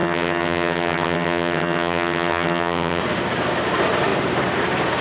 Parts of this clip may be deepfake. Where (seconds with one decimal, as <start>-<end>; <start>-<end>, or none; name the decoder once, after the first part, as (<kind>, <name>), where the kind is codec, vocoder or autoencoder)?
0.0-3.0 (vocoder, HiFi-GAN)